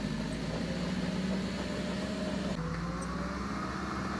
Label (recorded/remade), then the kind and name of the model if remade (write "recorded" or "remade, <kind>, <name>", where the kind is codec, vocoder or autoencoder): recorded